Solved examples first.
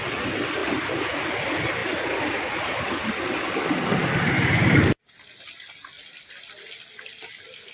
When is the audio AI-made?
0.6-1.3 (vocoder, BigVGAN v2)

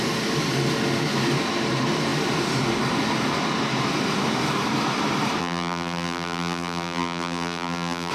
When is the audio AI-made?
5.4-8.1 (vocoder, BigVGAN v2)

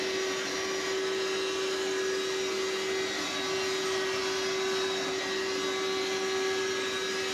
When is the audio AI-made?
none

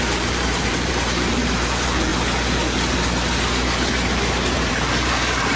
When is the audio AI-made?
0.0-2.1 (vocoder, BigVGAN v2); 4.7-5.6